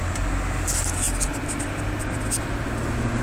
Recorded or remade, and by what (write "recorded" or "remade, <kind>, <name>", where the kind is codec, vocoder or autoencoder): recorded